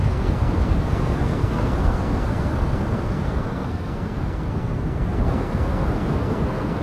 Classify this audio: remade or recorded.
remade